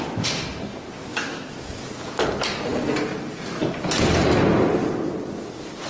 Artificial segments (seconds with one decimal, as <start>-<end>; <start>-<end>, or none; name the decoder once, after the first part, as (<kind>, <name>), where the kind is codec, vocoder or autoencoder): 1.1-1.8 (autoencoder, DAC-VAE)